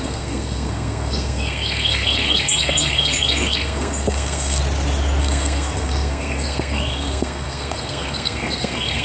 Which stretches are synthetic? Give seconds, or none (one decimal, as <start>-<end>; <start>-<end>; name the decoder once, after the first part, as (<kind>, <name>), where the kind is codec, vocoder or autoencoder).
0.0-4.6 (codec, SNAC); 5.2-9.0